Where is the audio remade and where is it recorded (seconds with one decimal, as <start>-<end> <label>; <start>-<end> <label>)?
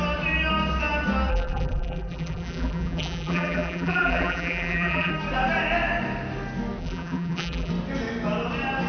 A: 0.0-1.3 recorded; 1.3-5.1 remade; 5.1-6.8 recorded; 6.8-7.7 remade; 7.7-8.9 recorded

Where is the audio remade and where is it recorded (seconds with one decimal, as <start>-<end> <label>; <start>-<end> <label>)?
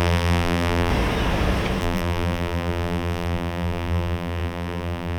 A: 0.0-0.9 remade; 0.9-1.8 recorded; 1.8-5.2 remade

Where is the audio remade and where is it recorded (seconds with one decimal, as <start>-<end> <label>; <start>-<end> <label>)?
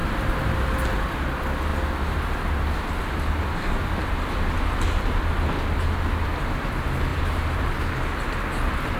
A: 0.0-0.6 remade; 0.6-7.1 recorded; 7.1-7.9 remade; 7.9-9.0 recorded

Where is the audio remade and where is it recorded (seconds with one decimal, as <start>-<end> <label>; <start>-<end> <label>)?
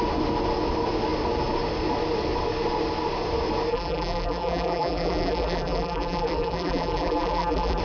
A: 0.0-3.7 recorded; 3.7-7.8 remade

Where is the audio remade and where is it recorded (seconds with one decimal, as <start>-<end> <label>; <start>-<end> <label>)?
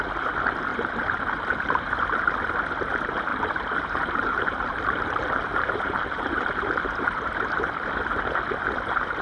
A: 0.0-0.7 recorded; 0.7-1.9 remade; 1.9-3.3 recorded; 3.3-7.4 remade; 7.4-9.2 recorded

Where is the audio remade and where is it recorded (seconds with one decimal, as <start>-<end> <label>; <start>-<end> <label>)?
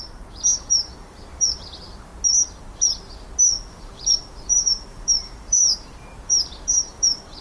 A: 0.0-2.1 remade; 2.1-3.7 recorded; 3.7-7.4 remade